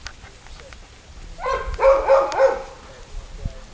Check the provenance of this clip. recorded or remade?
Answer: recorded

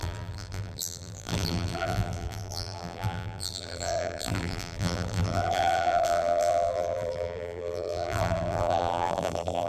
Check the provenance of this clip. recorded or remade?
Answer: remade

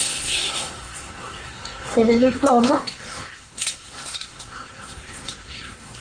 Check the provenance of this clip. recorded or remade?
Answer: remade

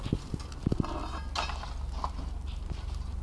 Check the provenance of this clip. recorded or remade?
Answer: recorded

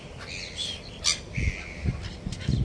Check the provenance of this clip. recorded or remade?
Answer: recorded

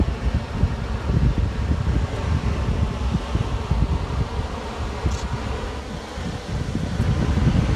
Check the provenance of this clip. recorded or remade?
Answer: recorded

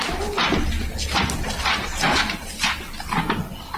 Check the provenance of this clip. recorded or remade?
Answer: recorded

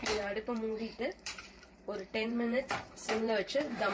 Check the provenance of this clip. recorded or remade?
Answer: remade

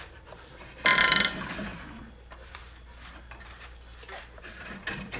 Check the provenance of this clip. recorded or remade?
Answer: remade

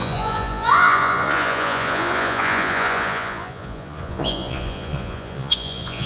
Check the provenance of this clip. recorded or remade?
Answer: remade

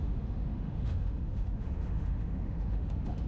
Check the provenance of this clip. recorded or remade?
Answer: remade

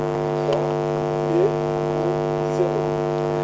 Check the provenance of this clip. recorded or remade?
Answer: recorded